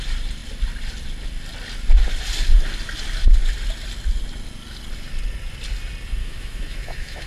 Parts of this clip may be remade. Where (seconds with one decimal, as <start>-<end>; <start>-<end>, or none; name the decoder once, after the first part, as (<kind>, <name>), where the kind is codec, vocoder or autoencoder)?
6.2-7.3 (autoencoder, DAC-VAE)